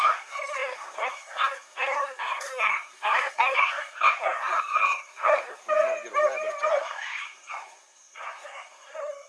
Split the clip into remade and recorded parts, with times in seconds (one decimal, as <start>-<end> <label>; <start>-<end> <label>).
0.0-5.6 remade; 5.6-6.8 recorded; 6.8-9.3 remade